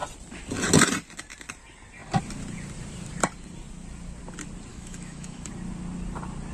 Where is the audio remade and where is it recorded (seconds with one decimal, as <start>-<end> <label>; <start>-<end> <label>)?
0.0-4.7 recorded; 4.7-5.5 remade; 5.5-6.5 recorded